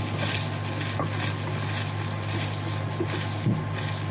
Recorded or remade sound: recorded